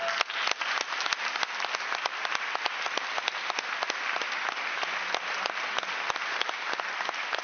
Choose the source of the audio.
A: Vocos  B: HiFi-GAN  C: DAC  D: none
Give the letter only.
D